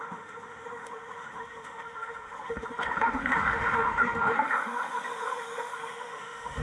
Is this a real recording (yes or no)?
no